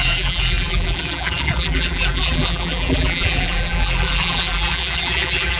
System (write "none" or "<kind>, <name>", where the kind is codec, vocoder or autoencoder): vocoder, BigVGAN v2